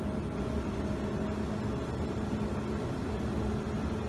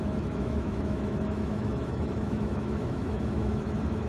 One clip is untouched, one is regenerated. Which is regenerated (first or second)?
second